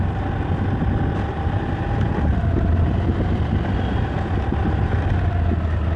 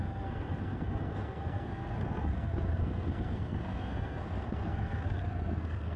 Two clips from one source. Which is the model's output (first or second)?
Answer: second